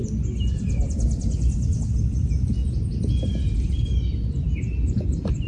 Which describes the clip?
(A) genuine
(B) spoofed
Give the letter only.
A